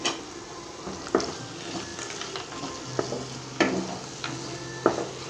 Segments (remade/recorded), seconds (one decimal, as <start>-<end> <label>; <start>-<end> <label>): 0.0-5.3 recorded